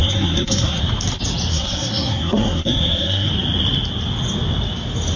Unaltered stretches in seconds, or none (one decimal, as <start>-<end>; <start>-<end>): 0.8-1.5; 3.3-5.2